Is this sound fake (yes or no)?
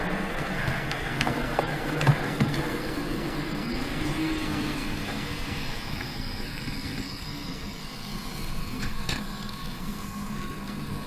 yes